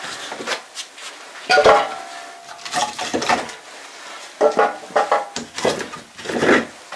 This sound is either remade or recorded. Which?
recorded